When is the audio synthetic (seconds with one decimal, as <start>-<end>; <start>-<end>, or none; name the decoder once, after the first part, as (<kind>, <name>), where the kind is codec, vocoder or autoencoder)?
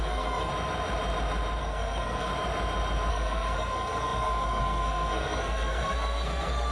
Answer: 0.0-0.5 (codec, SNAC); 1.6-2.3; 3.1-6.7